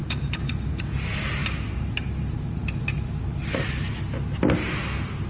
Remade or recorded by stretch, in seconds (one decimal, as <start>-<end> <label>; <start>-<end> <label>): 0.0-0.7 remade; 0.7-1.4 recorded; 1.4-3.2 remade; 3.2-5.3 recorded